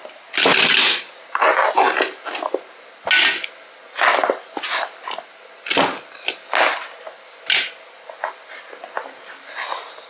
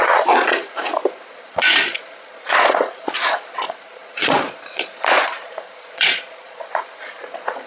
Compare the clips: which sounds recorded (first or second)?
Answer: first